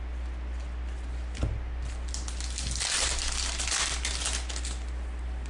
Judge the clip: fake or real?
real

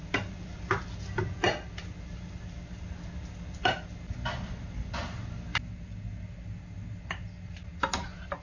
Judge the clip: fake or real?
real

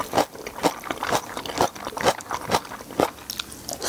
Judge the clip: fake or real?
real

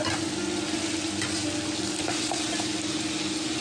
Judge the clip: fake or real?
real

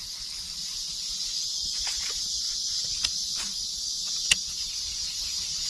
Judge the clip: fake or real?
real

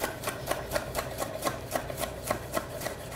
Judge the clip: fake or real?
fake